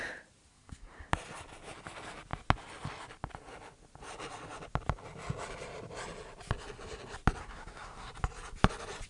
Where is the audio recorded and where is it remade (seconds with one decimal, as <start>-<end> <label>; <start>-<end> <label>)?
0.0-0.5 recorded; 0.5-1.1 remade; 1.1-7.4 recorded; 7.4-8.1 remade; 8.1-9.1 recorded